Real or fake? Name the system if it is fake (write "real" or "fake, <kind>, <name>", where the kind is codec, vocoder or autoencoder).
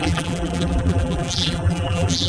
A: fake, vocoder, BigVGAN v2